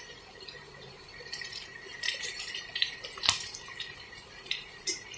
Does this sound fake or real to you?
fake